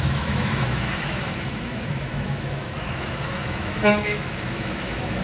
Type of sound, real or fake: fake